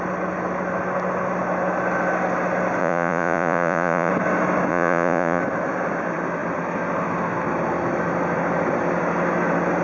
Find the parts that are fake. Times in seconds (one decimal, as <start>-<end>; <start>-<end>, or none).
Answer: 2.8-4.1; 4.7-5.4